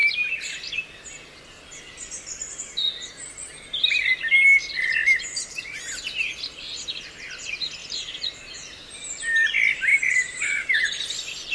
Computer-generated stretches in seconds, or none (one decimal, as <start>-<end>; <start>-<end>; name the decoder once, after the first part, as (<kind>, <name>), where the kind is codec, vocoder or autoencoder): 0.0-0.7 (vocoder, BigVGAN v2); 5.0-5.6; 7.8-8.9; 9.9-10.9